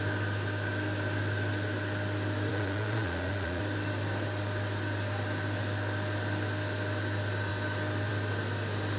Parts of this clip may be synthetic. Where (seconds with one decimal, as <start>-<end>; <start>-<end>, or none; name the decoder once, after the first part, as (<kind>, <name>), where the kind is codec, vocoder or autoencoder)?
2.5-3.6 (vocoder, Vocos)